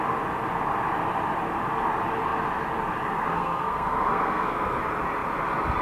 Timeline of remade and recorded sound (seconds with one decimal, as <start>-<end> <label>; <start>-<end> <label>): 0.0-3.3 recorded; 3.3-4.8 remade; 4.8-5.8 recorded